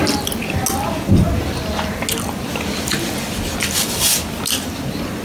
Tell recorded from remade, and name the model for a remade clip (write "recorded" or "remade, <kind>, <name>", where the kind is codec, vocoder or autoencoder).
recorded